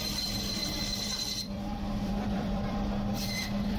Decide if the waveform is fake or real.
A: fake